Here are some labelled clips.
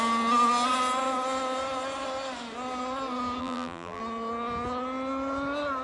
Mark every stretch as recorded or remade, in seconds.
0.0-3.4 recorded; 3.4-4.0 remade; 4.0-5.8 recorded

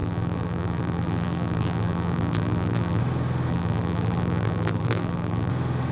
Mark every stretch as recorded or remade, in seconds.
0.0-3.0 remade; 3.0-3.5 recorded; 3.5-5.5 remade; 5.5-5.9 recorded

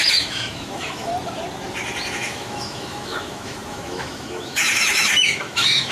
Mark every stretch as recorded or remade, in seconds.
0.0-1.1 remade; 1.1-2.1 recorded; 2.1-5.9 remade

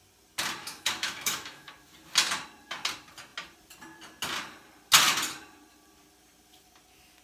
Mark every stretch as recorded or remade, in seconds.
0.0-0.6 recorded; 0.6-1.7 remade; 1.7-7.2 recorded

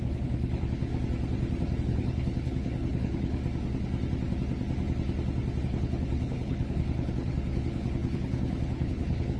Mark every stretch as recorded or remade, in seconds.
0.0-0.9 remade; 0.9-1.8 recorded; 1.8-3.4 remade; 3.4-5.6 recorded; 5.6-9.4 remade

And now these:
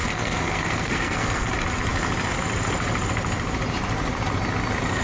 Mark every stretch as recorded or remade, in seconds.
0.0-1.5 remade; 1.5-5.0 recorded

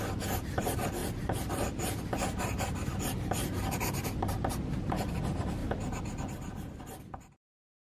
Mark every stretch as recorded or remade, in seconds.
0.0-3.6 recorded; 3.6-5.1 remade; 5.1-7.8 recorded

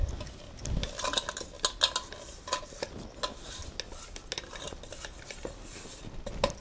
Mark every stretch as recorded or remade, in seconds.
0.0-6.6 recorded